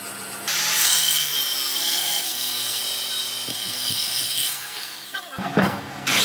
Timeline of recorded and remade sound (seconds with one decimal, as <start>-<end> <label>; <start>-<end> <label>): 0.0-0.8 recorded; 0.8-1.3 remade; 1.3-1.8 recorded; 1.8-2.8 remade; 2.8-3.5 recorded; 3.5-6.2 remade